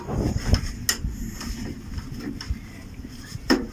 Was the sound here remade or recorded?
recorded